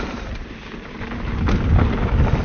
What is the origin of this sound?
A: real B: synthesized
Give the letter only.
A